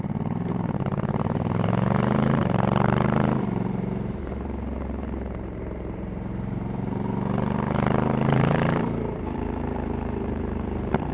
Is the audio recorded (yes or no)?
no